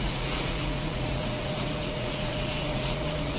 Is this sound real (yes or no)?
no